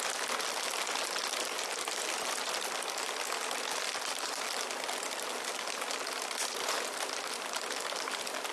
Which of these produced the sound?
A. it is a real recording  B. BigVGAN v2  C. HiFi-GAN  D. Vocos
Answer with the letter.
A